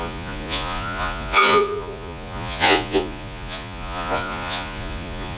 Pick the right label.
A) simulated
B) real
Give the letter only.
A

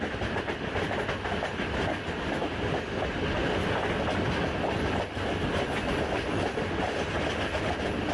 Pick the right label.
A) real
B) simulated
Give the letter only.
A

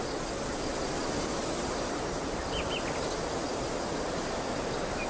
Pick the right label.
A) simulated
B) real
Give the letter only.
B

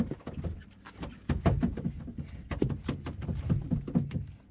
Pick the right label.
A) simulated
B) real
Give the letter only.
B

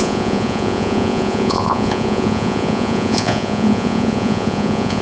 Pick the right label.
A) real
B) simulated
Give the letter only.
B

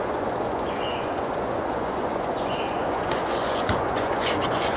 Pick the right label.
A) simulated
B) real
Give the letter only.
A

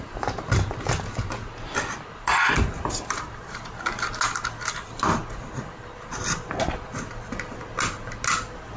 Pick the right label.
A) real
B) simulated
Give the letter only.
A